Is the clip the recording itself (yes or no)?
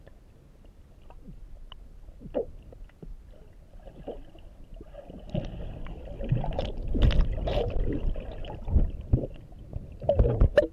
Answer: yes